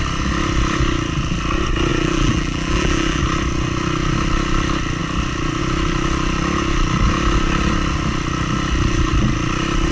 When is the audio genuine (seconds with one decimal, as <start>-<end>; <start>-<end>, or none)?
0.0-1.9; 3.2-9.9